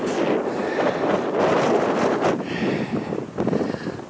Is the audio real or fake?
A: real